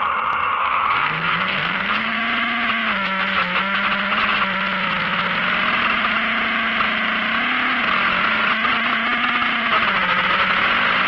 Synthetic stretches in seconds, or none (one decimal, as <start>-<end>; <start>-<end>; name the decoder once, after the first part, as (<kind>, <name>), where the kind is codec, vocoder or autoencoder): 0.6-2.2 (codec, SNAC)